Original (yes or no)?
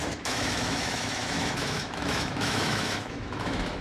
no